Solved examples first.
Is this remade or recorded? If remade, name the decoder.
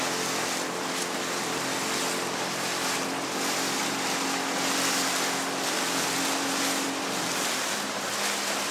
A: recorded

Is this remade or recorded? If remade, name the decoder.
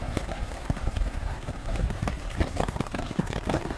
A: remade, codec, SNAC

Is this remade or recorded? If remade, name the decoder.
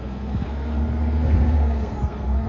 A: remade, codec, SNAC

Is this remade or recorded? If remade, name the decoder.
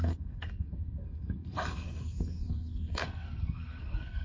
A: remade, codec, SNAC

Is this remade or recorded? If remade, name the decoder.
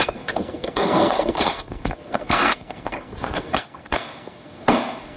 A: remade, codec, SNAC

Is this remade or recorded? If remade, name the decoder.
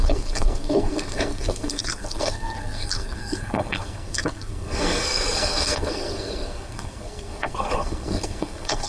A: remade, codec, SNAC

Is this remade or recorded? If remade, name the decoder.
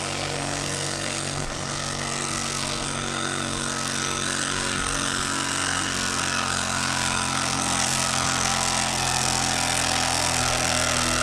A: remade, codec, SNAC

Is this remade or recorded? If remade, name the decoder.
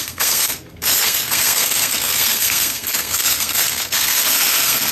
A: remade, codec, SNAC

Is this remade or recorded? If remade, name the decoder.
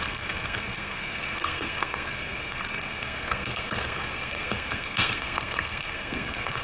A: remade, codec, SNAC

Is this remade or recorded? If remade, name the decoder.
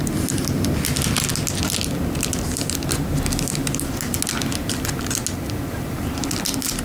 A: recorded